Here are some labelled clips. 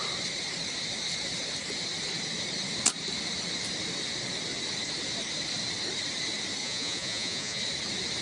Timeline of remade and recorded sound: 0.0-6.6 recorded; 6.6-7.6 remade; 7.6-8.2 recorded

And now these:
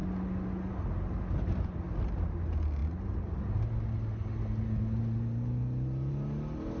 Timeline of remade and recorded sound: 0.0-6.8 recorded